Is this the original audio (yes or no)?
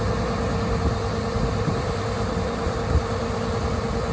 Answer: yes